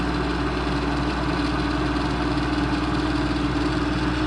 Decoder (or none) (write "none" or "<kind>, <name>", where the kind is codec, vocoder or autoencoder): none